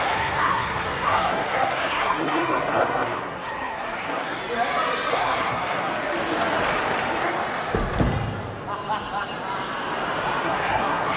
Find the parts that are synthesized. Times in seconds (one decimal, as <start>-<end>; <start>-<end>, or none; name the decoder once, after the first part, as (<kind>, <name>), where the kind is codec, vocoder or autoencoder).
0.0-4.4 (codec, SNAC); 5.1-5.9; 10.4-11.2